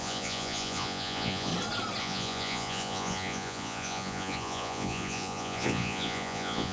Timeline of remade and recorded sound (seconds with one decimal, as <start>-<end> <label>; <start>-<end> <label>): 0.0-1.5 remade; 1.5-2.0 recorded; 2.0-6.7 remade